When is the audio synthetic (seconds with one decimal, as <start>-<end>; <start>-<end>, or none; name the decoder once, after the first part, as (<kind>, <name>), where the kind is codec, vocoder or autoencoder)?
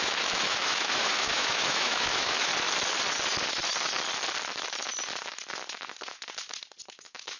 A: 0.0-2.5 (autoencoder, DAC-VAE); 6.9-7.4